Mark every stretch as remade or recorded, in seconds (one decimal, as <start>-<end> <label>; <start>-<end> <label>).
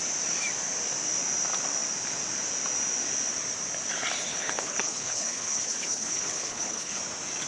0.0-4.3 recorded; 4.3-7.0 remade; 7.0-7.5 recorded